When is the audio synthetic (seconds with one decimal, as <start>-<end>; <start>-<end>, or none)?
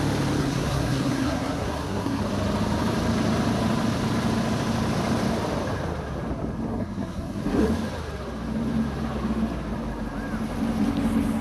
0.4-2.2; 6.7-7.7